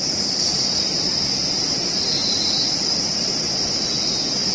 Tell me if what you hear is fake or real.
real